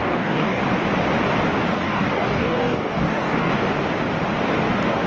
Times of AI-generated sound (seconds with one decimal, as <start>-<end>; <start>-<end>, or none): 0.0-0.6; 1.7-3.5